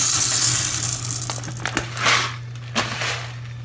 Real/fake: real